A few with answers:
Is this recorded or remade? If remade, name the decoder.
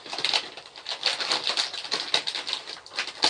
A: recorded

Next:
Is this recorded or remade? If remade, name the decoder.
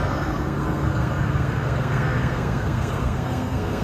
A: remade, codec, SNAC